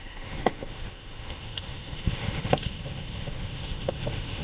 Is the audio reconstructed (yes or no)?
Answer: yes